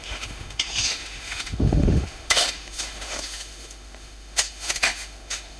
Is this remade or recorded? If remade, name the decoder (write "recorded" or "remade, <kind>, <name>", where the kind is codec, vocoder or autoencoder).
remade, autoencoder, DAC-VAE